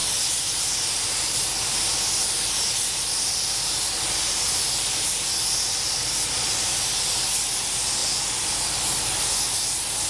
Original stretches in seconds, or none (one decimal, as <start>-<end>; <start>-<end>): 0.0-10.1